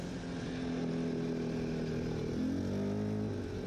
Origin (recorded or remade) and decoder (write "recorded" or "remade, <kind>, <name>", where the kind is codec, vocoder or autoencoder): recorded